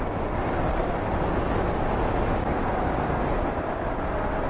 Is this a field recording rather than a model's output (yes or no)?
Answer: yes